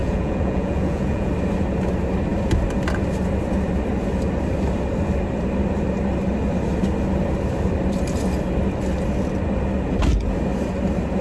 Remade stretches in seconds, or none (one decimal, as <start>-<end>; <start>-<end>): 0.0-1.3